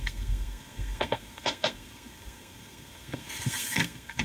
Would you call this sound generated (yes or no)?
yes